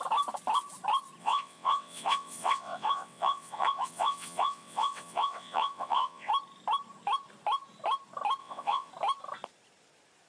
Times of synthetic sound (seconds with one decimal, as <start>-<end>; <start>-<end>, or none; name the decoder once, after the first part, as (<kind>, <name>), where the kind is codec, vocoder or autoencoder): 1.2-6.3 (vocoder, WaveNeXt); 8.4-8.9